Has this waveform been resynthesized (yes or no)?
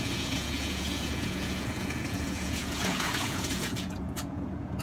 yes